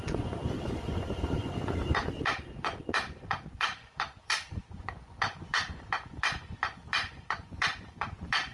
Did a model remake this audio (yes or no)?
yes